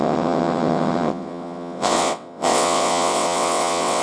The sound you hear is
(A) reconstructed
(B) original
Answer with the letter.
A